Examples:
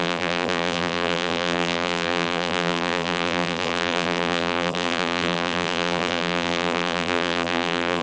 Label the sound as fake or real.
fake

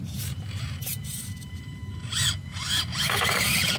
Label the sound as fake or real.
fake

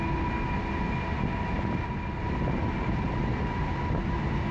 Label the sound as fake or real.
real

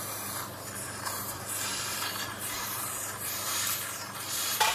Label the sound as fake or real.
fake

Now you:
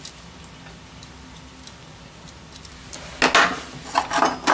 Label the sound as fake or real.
real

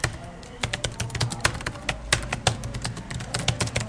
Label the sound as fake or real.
real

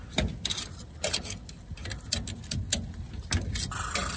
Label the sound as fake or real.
real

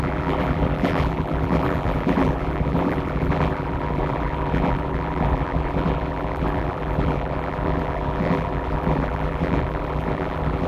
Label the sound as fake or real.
fake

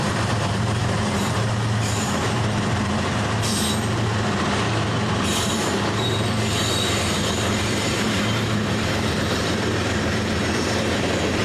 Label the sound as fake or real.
fake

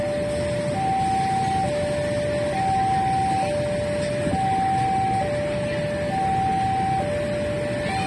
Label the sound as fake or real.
real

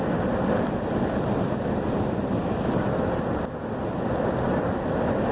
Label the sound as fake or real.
real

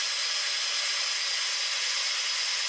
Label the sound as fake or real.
real